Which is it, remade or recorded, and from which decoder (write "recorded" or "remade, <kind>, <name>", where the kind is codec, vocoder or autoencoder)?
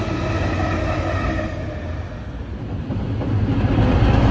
recorded